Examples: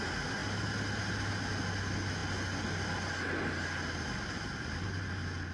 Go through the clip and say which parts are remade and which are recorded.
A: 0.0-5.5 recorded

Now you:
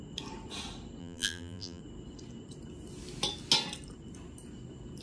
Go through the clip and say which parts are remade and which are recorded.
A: 0.0-1.0 recorded; 1.0-1.8 remade; 1.8-5.0 recorded

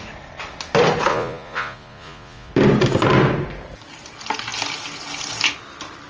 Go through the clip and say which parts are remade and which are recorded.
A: 0.0-1.1 recorded; 1.1-2.5 remade; 2.5-6.1 recorded